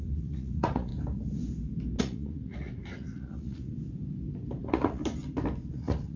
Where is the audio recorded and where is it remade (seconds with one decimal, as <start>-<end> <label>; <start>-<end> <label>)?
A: 0.0-0.9 remade; 0.9-2.0 recorded; 2.0-3.7 remade; 3.7-4.6 recorded; 4.6-5.0 remade; 5.0-5.7 recorded; 5.7-6.2 remade